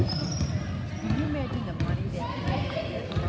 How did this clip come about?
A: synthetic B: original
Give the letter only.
B